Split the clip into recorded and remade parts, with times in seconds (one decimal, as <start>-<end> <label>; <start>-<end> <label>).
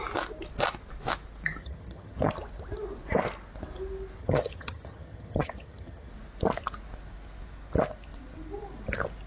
0.0-1.6 recorded; 1.6-2.3 remade; 2.3-4.2 recorded; 4.2-6.1 remade; 6.1-9.3 recorded